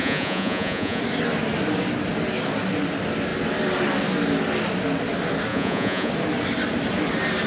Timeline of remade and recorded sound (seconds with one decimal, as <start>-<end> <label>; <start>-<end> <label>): 0.0-1.0 remade; 1.0-5.5 recorded; 5.5-6.1 remade; 6.1-7.5 recorded